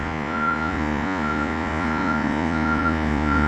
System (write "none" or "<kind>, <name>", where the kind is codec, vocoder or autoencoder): vocoder, Vocos